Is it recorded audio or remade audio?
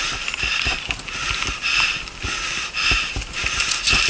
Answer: recorded